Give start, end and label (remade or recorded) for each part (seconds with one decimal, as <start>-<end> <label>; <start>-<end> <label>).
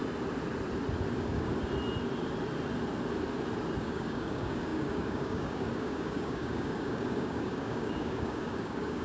0.0-1.1 recorded; 1.1-1.5 remade; 1.5-3.8 recorded; 3.8-9.0 remade